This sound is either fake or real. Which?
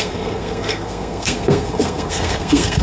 fake